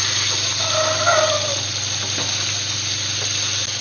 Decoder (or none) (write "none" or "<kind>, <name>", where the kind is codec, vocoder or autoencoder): none